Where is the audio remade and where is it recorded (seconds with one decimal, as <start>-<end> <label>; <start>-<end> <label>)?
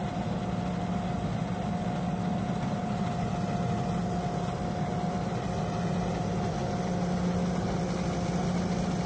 0.0-9.1 recorded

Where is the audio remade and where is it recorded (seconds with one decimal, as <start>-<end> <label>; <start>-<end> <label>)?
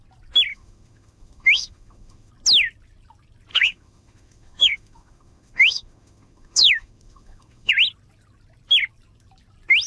0.0-0.5 recorded; 0.5-2.3 remade; 2.3-3.5 recorded; 3.5-7.7 remade; 7.7-9.9 recorded